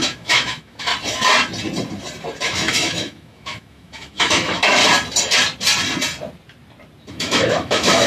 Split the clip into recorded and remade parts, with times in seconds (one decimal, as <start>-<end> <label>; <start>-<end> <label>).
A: 0.0-0.9 remade; 0.9-2.4 recorded; 2.4-4.8 remade; 4.8-7.1 recorded; 7.1-8.1 remade

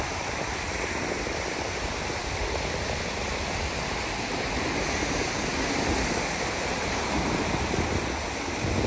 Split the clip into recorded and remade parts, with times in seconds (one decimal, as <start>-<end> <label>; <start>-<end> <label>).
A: 0.0-8.9 recorded

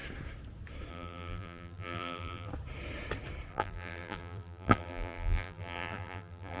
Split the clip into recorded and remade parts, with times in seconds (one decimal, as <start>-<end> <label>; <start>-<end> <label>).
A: 0.0-0.9 recorded; 0.9-2.5 remade; 2.5-3.5 recorded; 3.5-6.6 remade

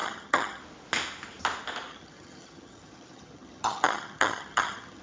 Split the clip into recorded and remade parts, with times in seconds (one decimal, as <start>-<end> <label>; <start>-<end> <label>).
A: 0.0-0.6 remade; 0.6-1.9 recorded; 1.9-5.0 remade

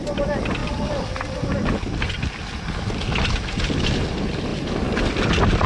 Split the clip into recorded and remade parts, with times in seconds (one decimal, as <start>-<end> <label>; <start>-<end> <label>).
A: 0.0-5.7 recorded

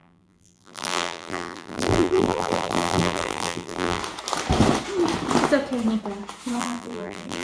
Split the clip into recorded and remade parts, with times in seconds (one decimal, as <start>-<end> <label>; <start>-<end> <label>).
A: 0.0-4.0 remade; 4.0-6.6 recorded; 6.6-7.4 remade

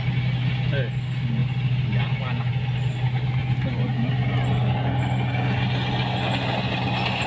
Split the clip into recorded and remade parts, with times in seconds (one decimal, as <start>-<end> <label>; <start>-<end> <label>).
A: 0.0-7.3 recorded